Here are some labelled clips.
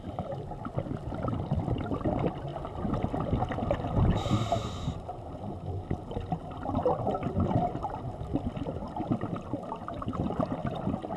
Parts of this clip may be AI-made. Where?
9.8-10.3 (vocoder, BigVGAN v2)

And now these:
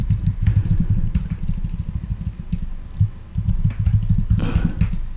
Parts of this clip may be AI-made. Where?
0.0-2.1 (vocoder, BigVGAN v2)

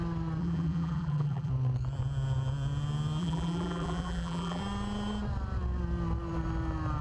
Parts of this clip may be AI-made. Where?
0.4-1.5 (vocoder, BigVGAN v2); 3.2-4.6

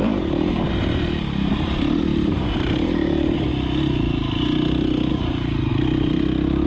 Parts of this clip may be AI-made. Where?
0.0-3.5 (vocoder, BigVGAN v2); 5.1-5.7

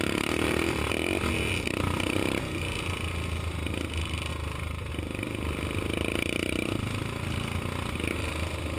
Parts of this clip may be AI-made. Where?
4.3-4.9 (vocoder, BigVGAN v2)